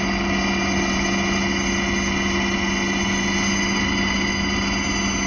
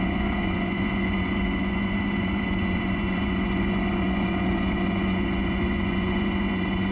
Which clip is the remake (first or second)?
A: second